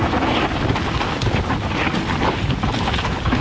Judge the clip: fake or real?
real